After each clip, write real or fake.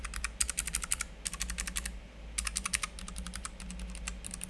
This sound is real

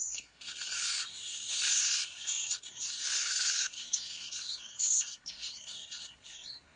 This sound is fake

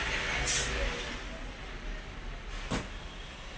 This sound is real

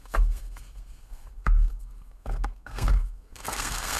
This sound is fake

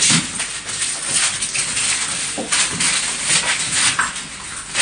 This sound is real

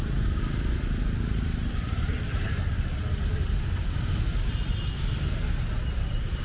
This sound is real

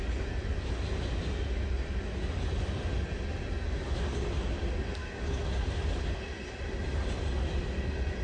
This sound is real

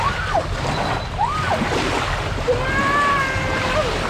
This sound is real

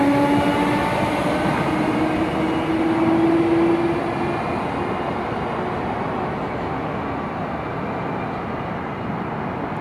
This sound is real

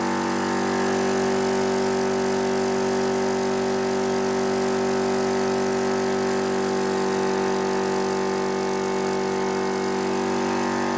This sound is real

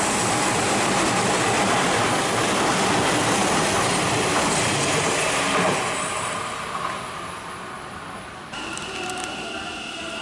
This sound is real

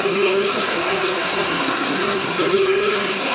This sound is fake